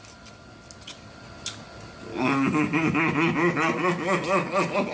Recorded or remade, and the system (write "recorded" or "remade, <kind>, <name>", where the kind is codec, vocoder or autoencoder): recorded